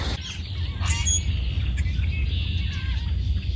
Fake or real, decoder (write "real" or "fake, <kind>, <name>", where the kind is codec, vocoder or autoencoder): real